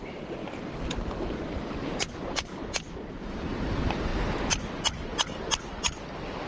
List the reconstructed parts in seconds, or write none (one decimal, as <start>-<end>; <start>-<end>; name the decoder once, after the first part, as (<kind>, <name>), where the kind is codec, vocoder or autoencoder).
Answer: 0.0-0.4 (vocoder, BigVGAN v2); 0.9-2.5; 3.1-4.1